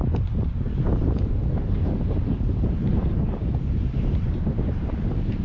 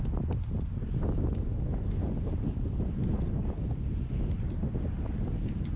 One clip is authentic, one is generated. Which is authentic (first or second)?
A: second